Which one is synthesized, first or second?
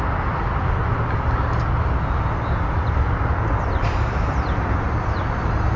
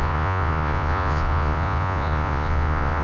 second